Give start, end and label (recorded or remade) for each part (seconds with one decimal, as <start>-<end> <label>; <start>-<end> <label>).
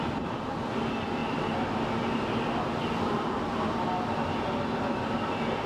0.0-5.7 recorded